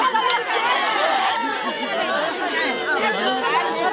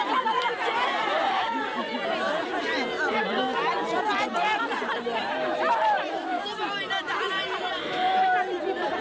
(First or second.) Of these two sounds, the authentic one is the first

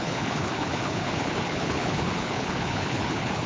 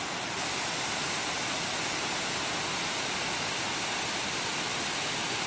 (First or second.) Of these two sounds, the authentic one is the second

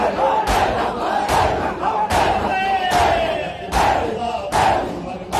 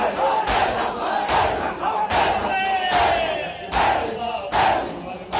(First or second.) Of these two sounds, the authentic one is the second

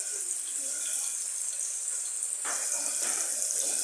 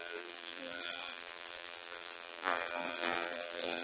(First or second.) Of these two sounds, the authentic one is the first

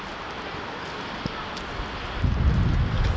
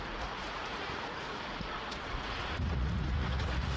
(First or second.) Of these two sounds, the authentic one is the first